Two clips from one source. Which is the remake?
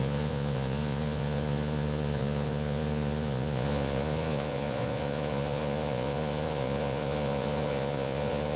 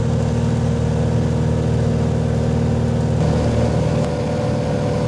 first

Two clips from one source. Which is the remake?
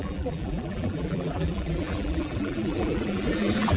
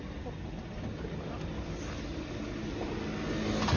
first